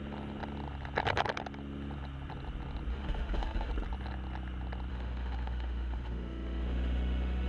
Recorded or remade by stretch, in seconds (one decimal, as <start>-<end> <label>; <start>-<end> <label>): 0.0-2.9 recorded; 2.9-3.7 remade; 3.7-4.9 recorded; 4.9-7.5 remade